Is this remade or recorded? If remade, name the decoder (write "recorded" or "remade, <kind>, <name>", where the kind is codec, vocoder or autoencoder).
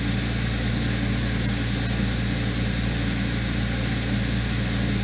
recorded